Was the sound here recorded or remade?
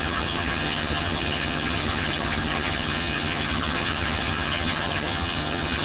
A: remade